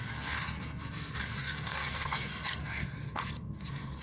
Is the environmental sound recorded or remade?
remade